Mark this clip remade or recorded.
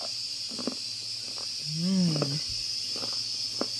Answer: recorded